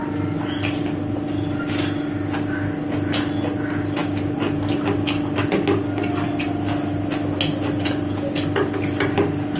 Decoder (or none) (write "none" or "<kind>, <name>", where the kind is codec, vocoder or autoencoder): none